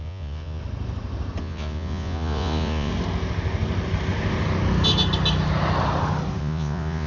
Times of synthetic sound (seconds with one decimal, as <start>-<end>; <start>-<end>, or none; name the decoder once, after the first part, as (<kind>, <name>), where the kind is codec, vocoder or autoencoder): 0.0-0.6 (vocoder, Vocos); 1.4-2.9; 6.4-7.1